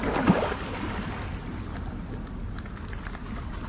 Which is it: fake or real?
real